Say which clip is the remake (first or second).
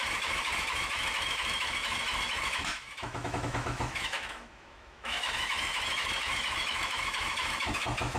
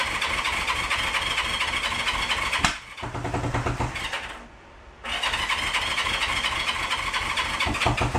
first